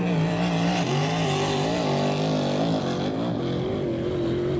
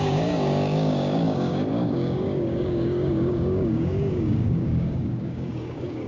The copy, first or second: second